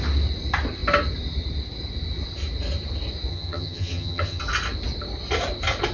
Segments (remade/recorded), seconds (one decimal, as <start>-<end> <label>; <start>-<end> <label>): 0.0-3.3 recorded; 3.3-4.4 remade; 4.4-5.9 recorded